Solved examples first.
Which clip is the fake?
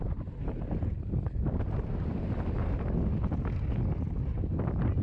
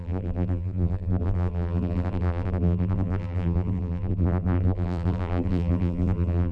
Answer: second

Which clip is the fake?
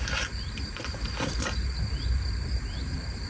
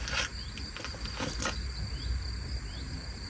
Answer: first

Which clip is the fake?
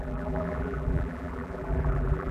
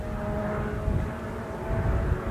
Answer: first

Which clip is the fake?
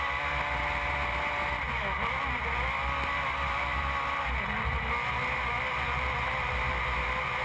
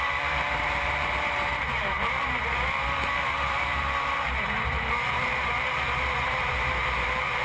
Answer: second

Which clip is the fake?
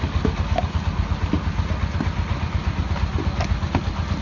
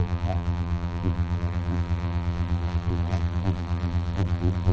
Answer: second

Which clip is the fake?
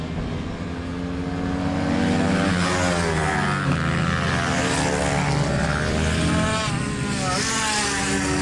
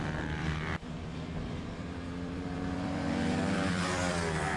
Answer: second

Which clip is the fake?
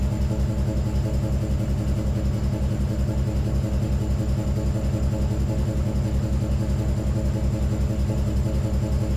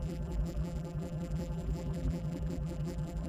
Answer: second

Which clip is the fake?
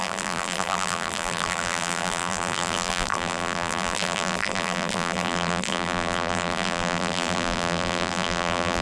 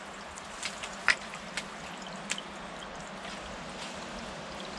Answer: first